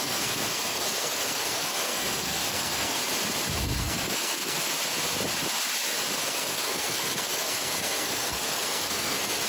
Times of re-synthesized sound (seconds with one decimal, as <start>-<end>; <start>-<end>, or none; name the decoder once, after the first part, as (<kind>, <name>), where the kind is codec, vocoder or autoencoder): 0.0-3.0 (codec, SNAC); 3.6-4.7; 6.2-9.5